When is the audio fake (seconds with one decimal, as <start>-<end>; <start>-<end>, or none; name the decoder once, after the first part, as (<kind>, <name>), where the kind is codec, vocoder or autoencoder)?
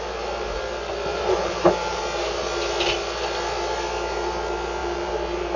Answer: 1.1-2.0 (vocoder, BigVGAN v2); 4.8-5.6